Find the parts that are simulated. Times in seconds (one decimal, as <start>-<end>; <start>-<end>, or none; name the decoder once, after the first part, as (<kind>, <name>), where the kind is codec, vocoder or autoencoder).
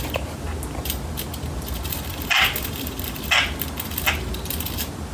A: 2.1-3.3 (vocoder, BigVGAN v2)